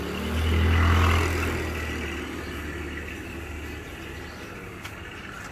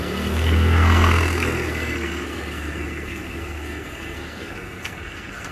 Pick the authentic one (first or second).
first